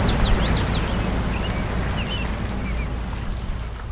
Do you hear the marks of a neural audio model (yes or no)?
no